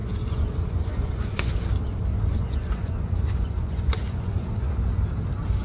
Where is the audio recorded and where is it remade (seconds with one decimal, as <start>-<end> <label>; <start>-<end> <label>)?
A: 0.0-1.5 remade; 1.5-2.1 recorded; 2.1-4.8 remade; 4.8-5.6 recorded